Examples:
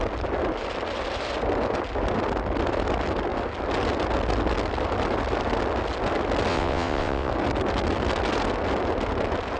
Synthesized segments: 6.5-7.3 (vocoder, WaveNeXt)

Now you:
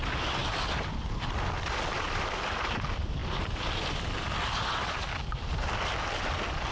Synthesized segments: none

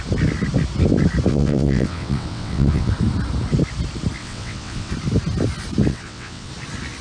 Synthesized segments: 1.3-2.9 (vocoder, WaveNeXt); 4.2-4.9; 5.9-6.5

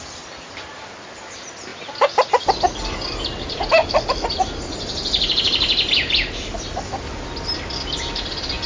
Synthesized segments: none

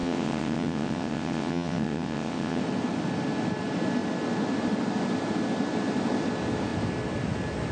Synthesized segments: 0.0-2.6 (vocoder, WaveNeXt)